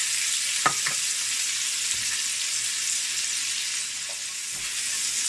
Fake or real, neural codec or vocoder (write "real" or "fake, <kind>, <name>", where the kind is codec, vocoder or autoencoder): real